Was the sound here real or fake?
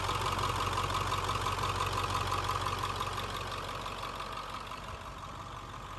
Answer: real